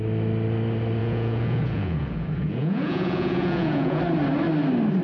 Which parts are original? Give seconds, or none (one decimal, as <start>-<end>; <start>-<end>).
0.0-1.0; 4.0-5.0